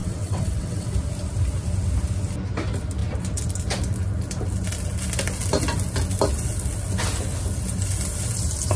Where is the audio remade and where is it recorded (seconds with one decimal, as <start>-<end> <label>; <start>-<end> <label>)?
0.0-0.9 remade; 0.9-8.8 recorded